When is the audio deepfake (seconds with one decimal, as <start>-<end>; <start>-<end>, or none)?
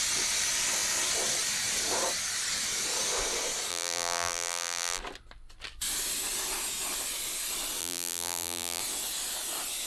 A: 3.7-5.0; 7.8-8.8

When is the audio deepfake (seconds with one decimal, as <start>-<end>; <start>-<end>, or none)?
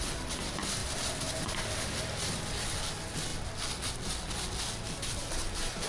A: none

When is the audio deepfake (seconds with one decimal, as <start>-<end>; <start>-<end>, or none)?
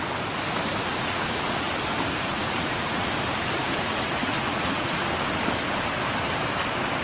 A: 0.9-1.7; 2.3-3.1; 3.6-5.1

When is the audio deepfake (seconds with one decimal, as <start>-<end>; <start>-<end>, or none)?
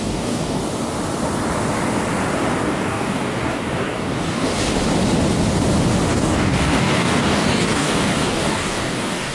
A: 0.0-0.6; 2.6-4.5; 6.1-9.3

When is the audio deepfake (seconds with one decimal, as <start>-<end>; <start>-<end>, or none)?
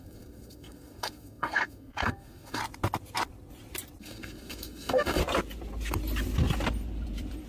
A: 0.0-2.6; 4.0-5.2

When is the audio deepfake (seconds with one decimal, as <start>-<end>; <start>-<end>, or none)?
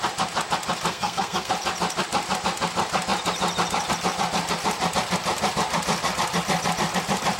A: 0.9-1.5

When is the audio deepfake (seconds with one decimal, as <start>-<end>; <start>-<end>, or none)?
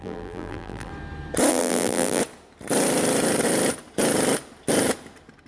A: 0.0-0.9; 1.5-2.2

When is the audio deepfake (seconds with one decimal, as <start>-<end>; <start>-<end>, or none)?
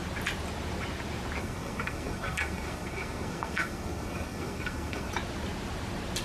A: 1.4-5.1